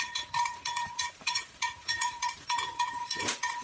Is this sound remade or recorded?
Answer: remade